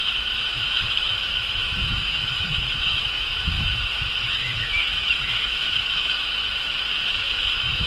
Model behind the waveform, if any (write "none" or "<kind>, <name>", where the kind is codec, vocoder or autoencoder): autoencoder, DAC-VAE